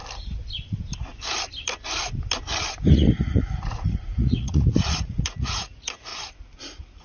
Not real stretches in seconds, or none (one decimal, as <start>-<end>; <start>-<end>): 2.9-6.1